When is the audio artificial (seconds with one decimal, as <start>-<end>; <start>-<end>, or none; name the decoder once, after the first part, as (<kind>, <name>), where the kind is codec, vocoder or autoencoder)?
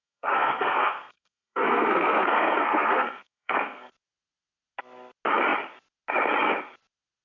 0.0-3.9 (codec, SNAC)